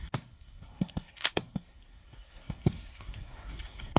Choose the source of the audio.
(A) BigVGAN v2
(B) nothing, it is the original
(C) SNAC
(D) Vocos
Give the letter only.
C